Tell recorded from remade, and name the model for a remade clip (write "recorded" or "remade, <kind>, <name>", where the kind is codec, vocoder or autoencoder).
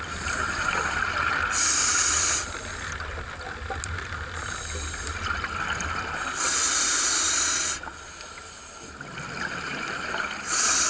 recorded